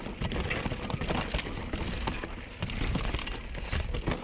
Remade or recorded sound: recorded